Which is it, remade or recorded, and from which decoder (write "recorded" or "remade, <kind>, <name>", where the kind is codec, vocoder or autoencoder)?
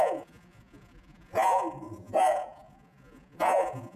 remade, vocoder, Vocos